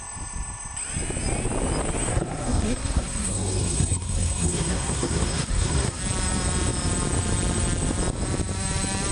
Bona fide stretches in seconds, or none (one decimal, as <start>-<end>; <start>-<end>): 0.0-2.1; 6.0-9.1